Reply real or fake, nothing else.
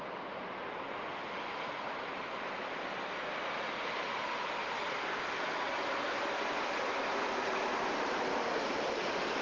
real